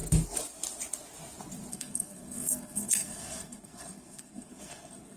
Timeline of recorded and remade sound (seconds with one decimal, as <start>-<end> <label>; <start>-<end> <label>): 0.0-1.7 recorded; 1.7-5.2 remade

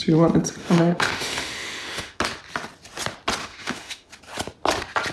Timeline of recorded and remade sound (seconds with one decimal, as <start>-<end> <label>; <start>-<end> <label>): 0.0-0.6 recorded; 0.6-2.2 remade; 2.2-3.4 recorded; 3.4-4.1 remade; 4.1-5.1 recorded

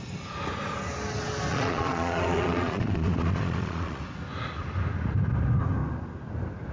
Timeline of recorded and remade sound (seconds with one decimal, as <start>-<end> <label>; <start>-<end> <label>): 0.0-1.5 recorded; 1.5-4.0 remade; 4.0-6.7 recorded

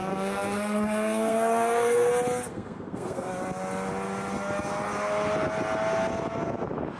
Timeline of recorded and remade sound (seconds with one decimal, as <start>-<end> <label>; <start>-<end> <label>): 0.0-2.1 remade; 2.1-2.5 recorded; 2.5-3.3 remade; 3.3-7.0 recorded

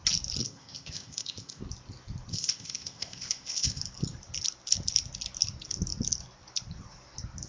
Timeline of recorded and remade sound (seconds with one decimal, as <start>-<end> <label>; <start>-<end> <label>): 0.0-0.4 recorded; 0.4-1.6 remade; 1.6-2.3 recorded; 2.3-3.8 remade; 3.8-7.5 recorded

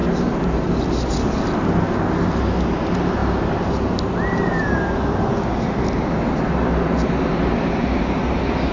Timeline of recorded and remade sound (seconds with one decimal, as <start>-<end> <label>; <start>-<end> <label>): 0.0-3.2 recorded; 3.2-3.7 remade; 3.7-8.7 recorded